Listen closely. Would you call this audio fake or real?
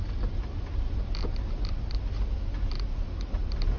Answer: real